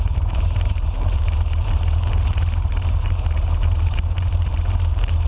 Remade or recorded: remade